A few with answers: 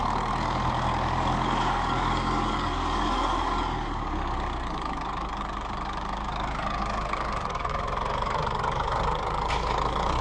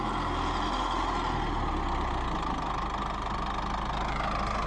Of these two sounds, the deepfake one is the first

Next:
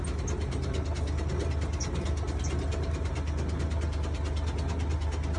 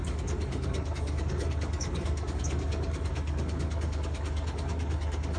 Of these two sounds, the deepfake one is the second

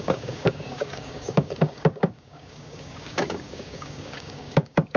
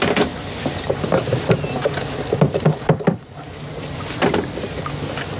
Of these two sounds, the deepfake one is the first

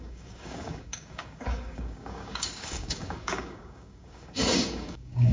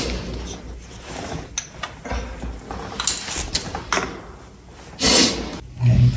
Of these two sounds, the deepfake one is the first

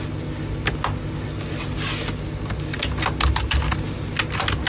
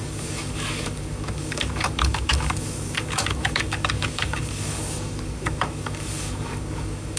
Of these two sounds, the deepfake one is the second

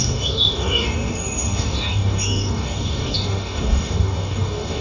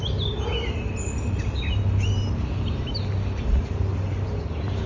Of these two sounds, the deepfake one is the first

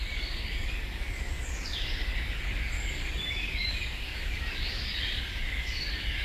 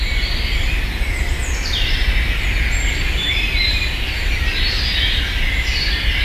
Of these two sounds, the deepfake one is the first